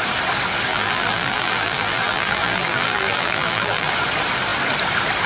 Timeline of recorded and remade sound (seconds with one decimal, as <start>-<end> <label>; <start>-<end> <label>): 0.0-0.7 recorded; 0.7-3.9 remade; 3.9-5.3 recorded